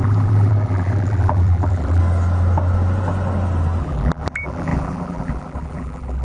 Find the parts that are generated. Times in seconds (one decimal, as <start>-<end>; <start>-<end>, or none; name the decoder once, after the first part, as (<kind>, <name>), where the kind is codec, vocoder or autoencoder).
0.0-2.0 (vocoder, BigVGAN v2); 3.8-6.2